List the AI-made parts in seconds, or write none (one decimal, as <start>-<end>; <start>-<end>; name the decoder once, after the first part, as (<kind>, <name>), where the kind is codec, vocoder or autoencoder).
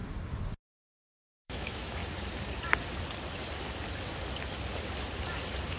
0.8-2.0 (autoencoder, DAC-VAE)